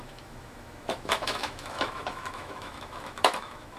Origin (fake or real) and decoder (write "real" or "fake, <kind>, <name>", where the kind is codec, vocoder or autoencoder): fake, autoencoder, DAC-VAE